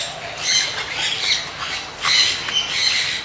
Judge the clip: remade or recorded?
recorded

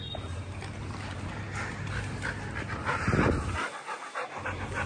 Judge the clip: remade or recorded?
recorded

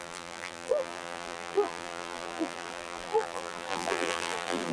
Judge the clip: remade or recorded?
remade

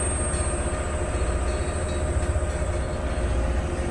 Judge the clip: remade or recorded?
recorded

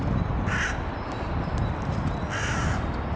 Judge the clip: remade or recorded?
recorded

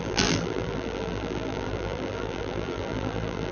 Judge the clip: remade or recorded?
remade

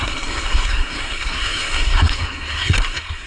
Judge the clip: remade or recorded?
remade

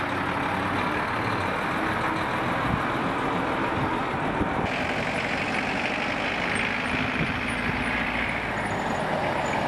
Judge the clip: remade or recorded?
recorded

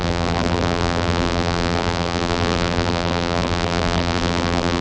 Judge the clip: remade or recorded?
remade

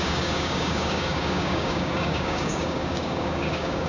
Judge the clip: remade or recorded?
remade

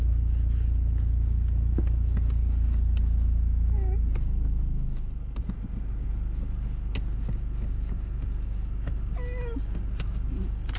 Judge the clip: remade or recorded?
recorded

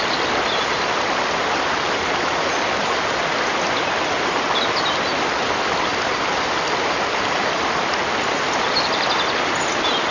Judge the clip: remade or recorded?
recorded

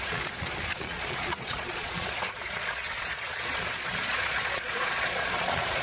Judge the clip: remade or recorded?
remade